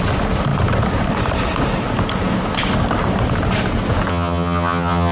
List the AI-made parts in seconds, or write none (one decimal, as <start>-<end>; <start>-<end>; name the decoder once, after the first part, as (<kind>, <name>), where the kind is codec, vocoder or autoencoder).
4.1-5.1 (vocoder, HiFi-GAN)